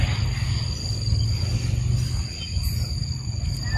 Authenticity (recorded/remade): recorded